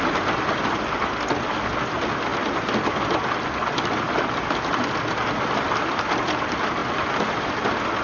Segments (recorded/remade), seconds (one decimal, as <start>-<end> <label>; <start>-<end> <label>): 0.0-8.0 recorded

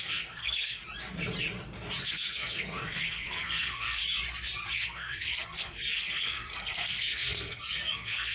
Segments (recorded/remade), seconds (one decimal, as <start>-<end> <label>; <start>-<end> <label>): 0.0-0.8 remade; 0.8-2.0 recorded; 2.0-4.0 remade; 4.0-4.7 recorded; 4.7-8.3 remade

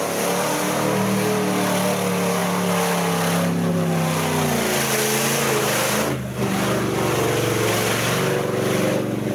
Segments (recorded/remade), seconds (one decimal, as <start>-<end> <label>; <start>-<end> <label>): 0.0-9.3 recorded

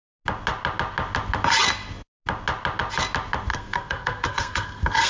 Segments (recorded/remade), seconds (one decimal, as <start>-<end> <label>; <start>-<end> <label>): 0.0-3.5 recorded; 3.5-5.1 remade

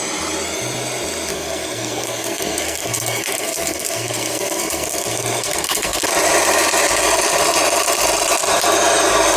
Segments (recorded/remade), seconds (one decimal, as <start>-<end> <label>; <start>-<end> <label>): 0.0-1.3 recorded; 1.3-6.1 remade; 6.1-9.4 recorded

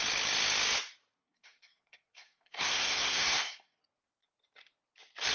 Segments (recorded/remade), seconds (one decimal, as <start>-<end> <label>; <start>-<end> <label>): 0.0-1.2 recorded; 1.2-3.8 remade; 3.8-5.3 recorded

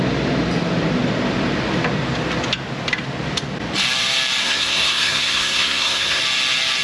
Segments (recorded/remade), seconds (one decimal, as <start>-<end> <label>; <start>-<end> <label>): 0.0-4.4 recorded; 4.4-6.2 remade; 6.2-6.8 recorded

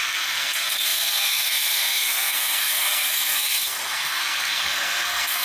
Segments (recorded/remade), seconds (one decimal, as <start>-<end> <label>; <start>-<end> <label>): 0.0-5.4 remade